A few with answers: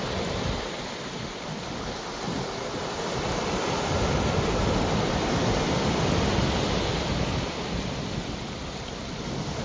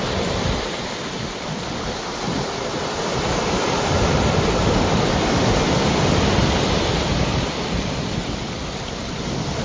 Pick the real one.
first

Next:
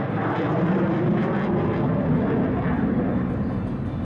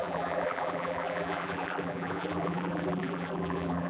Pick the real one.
first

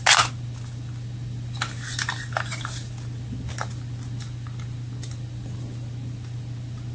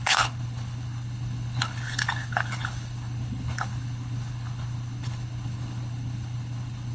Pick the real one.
first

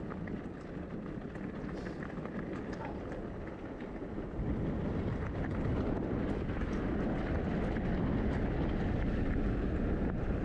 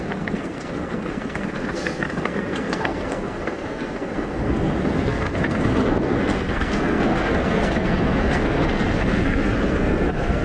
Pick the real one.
first